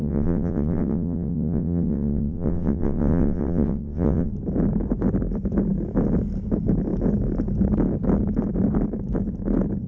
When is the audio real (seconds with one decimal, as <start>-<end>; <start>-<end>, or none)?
4.3-9.9